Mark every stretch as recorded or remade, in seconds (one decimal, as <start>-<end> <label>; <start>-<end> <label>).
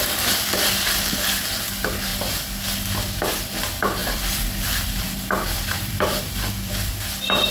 0.0-2.1 recorded; 2.1-2.6 remade; 2.6-4.0 recorded; 4.0-6.9 remade; 6.9-7.5 recorded